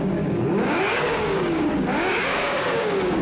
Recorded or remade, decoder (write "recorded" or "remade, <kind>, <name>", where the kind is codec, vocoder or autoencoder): remade, codec, DAC